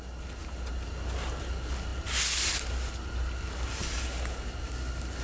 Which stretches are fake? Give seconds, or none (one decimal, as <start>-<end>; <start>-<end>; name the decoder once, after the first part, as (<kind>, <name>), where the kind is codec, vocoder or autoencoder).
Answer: none